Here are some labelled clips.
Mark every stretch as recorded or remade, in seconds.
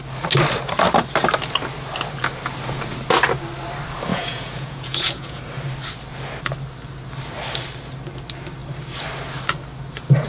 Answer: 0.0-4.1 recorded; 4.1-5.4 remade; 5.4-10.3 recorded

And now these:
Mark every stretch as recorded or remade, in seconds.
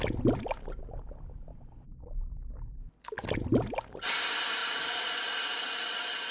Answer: 0.0-1.5 recorded; 1.5-2.1 remade; 2.1-6.3 recorded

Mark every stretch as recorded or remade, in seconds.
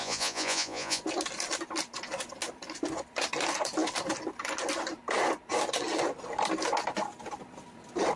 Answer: 0.0-1.0 remade; 1.0-8.2 recorded